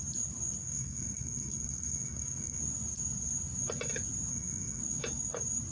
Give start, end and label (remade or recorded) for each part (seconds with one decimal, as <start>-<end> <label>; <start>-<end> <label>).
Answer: 0.0-0.6 recorded; 0.6-2.6 remade; 2.6-4.3 recorded; 4.3-4.8 remade; 4.8-5.7 recorded